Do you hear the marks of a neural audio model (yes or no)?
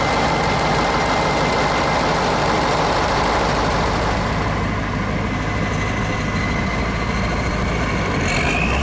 no